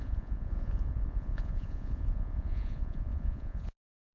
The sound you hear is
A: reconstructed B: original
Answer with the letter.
A